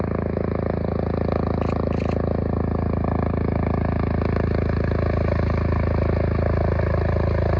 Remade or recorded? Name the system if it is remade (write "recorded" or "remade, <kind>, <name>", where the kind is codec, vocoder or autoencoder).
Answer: recorded